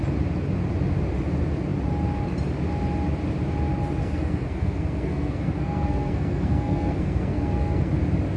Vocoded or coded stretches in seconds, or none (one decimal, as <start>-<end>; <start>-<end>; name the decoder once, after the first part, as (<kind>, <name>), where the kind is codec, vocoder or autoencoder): 4.0-7.9 (codec, SNAC)